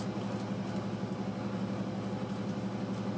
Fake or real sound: real